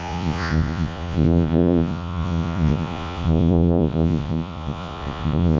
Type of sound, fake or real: fake